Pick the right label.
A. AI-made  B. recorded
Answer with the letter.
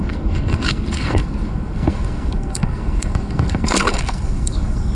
A